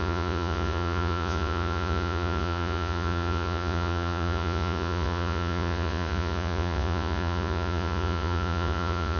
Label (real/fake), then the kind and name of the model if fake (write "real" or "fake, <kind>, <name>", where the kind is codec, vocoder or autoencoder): fake, vocoder, Vocos